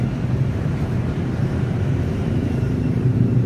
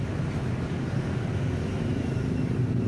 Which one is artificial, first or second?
first